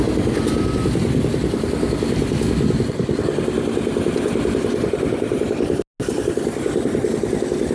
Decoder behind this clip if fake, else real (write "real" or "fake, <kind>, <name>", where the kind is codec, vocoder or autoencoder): real